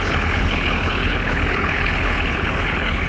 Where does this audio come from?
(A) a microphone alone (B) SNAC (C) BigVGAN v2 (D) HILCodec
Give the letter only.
D